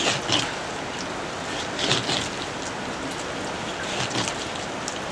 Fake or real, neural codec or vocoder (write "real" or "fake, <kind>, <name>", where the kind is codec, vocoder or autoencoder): real